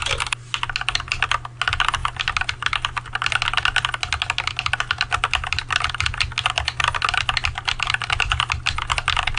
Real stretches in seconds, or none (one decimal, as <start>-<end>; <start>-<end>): 0.0-9.4